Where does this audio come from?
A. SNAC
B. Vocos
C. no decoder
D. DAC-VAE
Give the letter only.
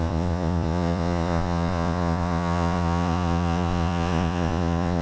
B